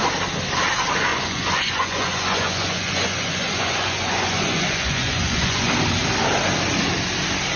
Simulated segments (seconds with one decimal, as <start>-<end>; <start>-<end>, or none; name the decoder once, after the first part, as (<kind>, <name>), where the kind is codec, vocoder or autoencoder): 1.1-5.7 (vocoder, Vocos)

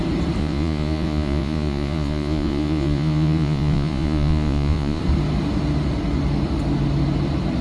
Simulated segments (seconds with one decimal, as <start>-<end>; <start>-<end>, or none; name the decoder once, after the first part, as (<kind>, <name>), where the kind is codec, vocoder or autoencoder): 0.4-5.0 (vocoder, Vocos)